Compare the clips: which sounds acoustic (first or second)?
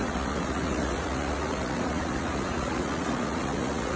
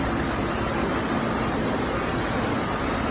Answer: second